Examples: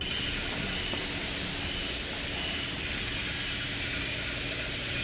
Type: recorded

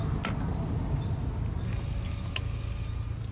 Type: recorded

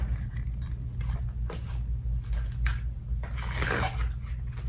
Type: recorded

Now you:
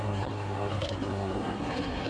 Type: remade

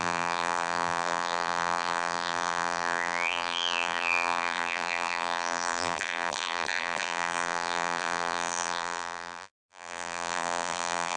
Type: remade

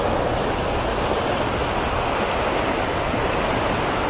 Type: recorded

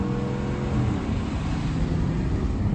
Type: recorded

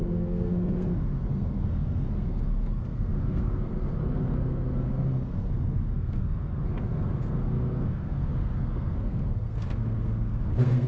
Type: remade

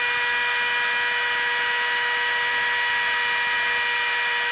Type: recorded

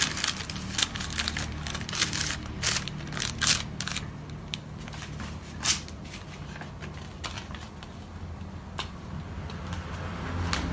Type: recorded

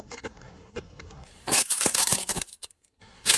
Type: remade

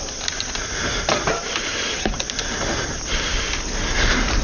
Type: remade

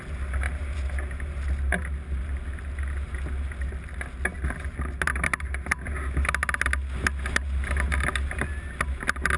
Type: recorded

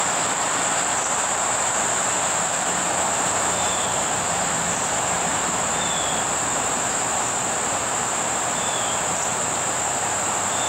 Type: remade